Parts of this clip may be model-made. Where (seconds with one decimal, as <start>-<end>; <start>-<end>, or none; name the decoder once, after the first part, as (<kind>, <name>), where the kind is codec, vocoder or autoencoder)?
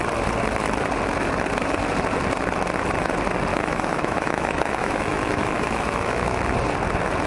3.5-6.4 (autoencoder, DAC-VAE)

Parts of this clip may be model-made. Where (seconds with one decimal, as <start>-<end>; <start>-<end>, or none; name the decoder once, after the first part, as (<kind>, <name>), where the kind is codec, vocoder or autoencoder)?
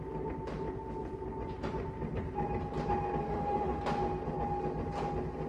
3.2-3.8 (autoencoder, DAC-VAE)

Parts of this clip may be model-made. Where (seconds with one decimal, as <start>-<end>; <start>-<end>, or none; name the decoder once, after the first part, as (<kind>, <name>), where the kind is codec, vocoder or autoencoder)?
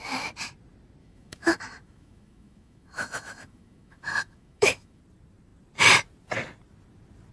1.0-5.0 (autoencoder, DAC-VAE)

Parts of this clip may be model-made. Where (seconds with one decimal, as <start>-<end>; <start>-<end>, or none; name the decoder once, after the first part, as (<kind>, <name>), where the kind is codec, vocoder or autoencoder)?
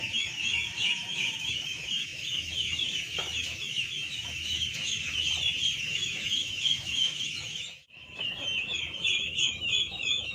0.0-5.3 (autoencoder, DAC-VAE); 5.8-10.3